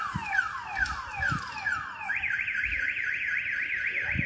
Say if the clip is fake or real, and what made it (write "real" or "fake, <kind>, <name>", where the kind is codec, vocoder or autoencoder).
real